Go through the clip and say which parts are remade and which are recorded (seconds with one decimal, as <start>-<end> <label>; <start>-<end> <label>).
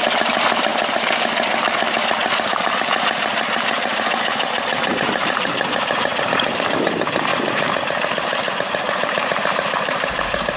0.0-0.7 remade; 0.7-1.6 recorded; 1.6-2.2 remade; 2.2-4.9 recorded; 4.9-7.3 remade; 7.3-8.5 recorded; 8.5-10.6 remade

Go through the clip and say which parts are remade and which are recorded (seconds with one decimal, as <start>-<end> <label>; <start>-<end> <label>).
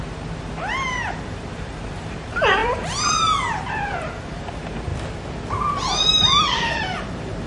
0.0-4.9 remade; 4.9-6.4 recorded; 6.4-7.5 remade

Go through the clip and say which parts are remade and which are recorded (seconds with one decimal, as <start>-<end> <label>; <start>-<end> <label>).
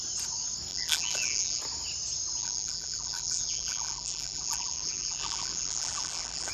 0.0-0.7 recorded; 0.7-1.6 remade; 1.6-2.4 recorded; 2.4-6.5 remade